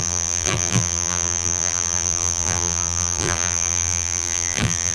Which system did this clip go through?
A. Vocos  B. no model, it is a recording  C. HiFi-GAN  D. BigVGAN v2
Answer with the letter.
D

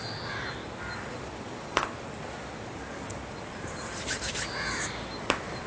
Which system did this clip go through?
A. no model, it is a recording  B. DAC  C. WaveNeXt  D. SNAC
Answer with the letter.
A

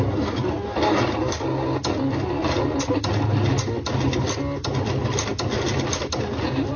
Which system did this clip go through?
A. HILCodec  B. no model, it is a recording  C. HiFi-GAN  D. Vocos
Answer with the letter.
B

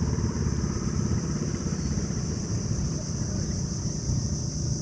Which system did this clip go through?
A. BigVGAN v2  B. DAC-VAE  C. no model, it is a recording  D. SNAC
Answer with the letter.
A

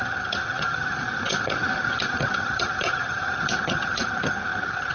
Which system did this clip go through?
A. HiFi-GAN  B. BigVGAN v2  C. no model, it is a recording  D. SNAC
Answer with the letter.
A